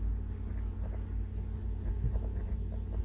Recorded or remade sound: recorded